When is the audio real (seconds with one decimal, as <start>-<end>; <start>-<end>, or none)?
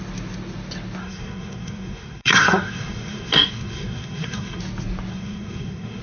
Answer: 0.0-1.0; 4.6-5.1